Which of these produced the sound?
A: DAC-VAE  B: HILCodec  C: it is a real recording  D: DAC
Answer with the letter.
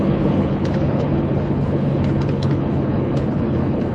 B